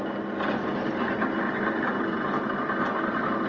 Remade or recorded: recorded